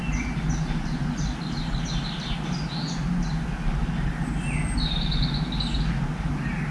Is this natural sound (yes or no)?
yes